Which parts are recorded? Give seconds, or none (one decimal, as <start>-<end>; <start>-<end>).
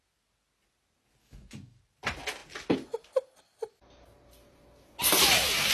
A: 0.0-1.2; 1.8-5.7